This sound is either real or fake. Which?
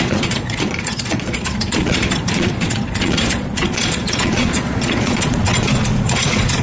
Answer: fake